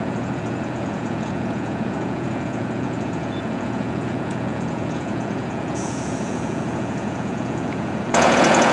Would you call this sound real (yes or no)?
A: no